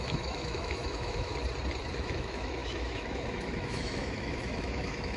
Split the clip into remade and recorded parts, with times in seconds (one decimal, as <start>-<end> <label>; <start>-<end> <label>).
0.0-1.3 remade; 1.3-1.9 recorded; 1.9-5.2 remade